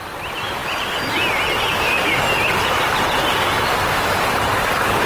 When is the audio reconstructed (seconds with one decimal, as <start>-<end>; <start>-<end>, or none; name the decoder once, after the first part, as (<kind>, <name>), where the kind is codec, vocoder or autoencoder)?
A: none